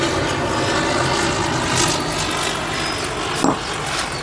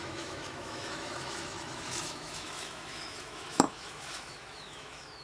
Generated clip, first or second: second